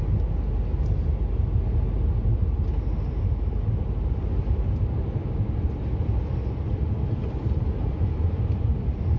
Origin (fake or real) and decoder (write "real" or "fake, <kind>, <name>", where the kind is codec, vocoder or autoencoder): real